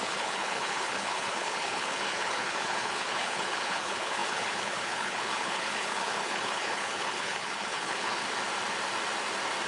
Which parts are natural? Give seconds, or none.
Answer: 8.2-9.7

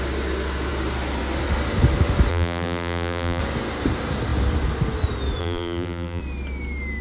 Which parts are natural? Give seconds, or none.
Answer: 0.0-2.3; 3.4-5.4; 6.2-7.0

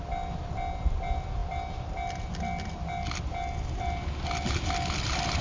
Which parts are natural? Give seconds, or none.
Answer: 0.0-5.4

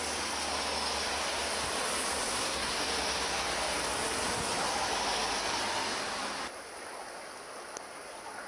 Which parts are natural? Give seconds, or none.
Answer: 0.0-2.2; 2.8-8.5

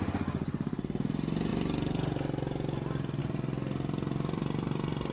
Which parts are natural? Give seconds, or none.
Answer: 0.0-5.1

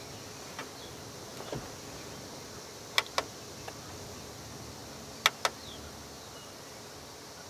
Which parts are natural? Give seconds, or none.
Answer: 0.0-7.5

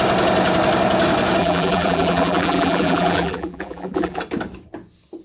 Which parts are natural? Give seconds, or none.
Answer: 0.0-1.4; 4.2-5.2

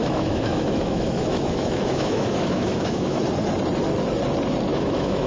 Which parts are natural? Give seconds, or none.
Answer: 3.2-4.7